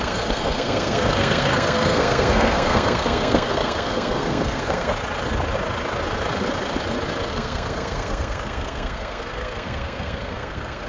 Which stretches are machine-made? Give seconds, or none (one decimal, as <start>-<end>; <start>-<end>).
0.0-4.9; 7.3-10.9